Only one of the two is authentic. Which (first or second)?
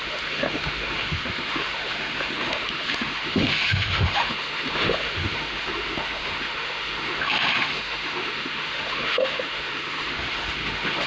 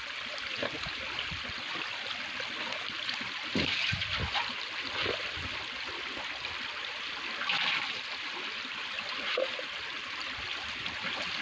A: second